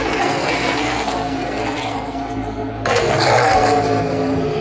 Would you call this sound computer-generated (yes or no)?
yes